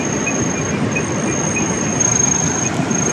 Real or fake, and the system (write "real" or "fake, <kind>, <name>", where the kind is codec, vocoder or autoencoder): real